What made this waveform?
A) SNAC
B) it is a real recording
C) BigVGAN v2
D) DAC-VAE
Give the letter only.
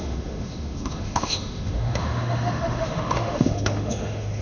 D